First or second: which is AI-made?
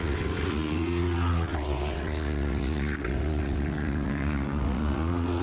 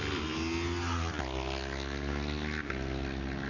first